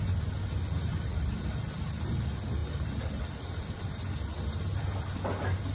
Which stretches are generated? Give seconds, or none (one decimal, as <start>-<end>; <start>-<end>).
0.9-2.1; 2.6-3.7